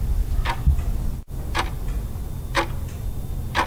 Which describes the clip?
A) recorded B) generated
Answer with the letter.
A